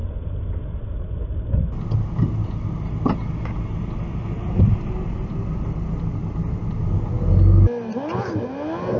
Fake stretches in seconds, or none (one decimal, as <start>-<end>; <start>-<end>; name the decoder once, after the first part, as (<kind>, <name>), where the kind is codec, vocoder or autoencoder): none